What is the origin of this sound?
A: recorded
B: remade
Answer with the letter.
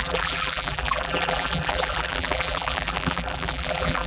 B